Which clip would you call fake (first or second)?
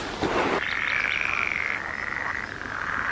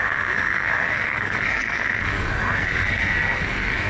second